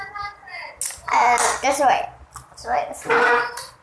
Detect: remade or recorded recorded